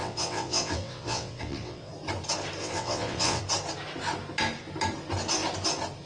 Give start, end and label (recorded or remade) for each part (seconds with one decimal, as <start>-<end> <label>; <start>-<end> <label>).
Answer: 0.0-1.9 remade; 1.9-2.6 recorded; 2.6-3.4 remade; 3.4-6.1 recorded

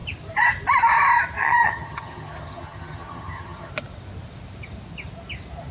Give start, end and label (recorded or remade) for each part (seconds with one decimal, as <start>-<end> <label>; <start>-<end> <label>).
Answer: 0.0-1.4 recorded; 1.4-3.7 remade; 3.7-5.7 recorded

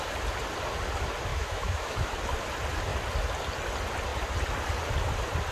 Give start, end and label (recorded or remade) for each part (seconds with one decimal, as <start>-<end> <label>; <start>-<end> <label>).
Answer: 0.0-1.3 recorded; 1.3-2.2 remade; 2.2-5.5 recorded

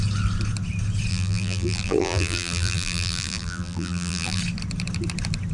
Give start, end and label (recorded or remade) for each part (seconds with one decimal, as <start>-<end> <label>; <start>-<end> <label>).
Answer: 0.0-1.1 recorded; 1.1-4.4 remade; 4.4-5.5 recorded

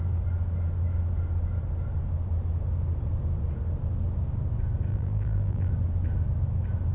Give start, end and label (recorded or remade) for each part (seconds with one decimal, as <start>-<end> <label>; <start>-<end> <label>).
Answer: 0.0-4.9 recorded; 4.9-5.7 remade; 5.7-6.9 recorded

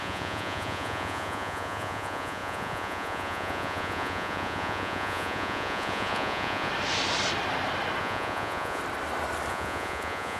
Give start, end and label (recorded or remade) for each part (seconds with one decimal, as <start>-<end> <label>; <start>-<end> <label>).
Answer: 0.0-6.7 remade; 6.7-8.0 recorded; 8.0-8.8 remade; 8.8-9.5 recorded; 9.5-10.4 remade